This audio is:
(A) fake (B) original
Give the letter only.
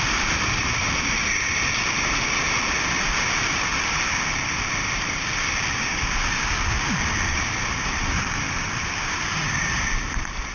A